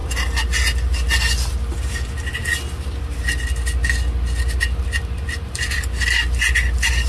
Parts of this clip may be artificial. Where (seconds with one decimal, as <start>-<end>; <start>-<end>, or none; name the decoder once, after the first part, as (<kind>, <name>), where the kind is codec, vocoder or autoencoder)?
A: none